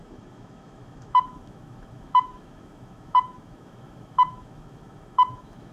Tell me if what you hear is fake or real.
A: fake